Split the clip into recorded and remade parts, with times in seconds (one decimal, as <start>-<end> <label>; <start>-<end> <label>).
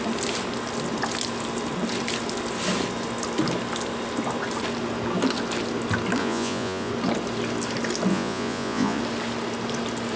0.0-6.2 recorded; 6.2-6.9 remade; 6.9-8.1 recorded; 8.1-9.0 remade; 9.0-10.2 recorded